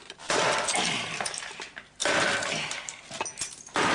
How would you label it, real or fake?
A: real